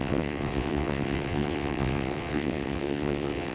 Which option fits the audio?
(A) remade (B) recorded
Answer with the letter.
A